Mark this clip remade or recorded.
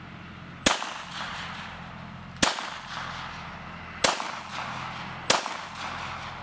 recorded